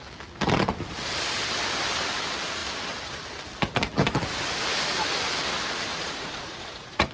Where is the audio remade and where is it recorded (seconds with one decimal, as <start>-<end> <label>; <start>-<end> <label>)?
0.0-5.9 recorded; 5.9-7.1 remade